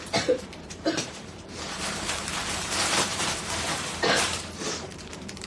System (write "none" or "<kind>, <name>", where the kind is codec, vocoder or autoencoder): vocoder, BigVGAN v2